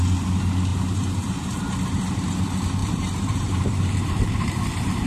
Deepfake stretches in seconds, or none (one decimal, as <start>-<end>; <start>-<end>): 0.7-1.6; 2.8-5.1